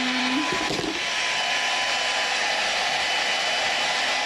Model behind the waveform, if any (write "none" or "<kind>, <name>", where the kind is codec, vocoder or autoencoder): none